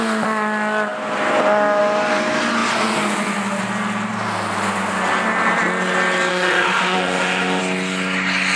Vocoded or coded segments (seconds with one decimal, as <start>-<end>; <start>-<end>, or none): 6.3-7.6